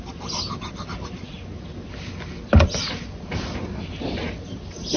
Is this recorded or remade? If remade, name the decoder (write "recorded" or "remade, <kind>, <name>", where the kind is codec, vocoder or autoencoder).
recorded